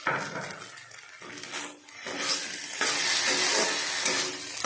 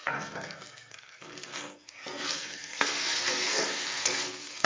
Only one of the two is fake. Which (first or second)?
second